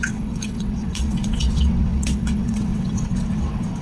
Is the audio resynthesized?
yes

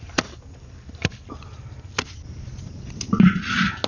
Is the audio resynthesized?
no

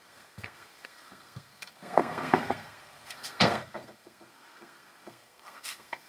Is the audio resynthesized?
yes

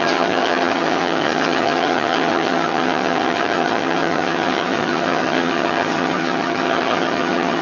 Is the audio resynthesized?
yes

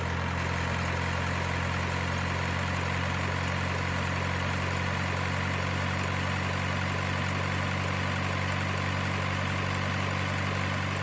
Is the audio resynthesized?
no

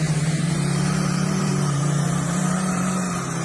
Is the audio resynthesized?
yes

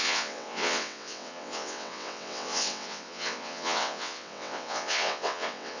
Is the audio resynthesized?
yes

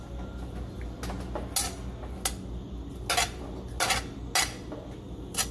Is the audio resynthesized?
no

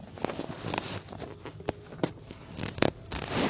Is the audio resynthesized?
no